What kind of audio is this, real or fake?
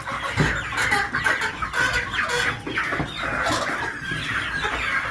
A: real